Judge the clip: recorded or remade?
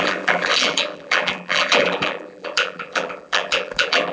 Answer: remade